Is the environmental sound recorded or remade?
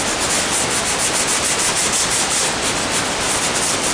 recorded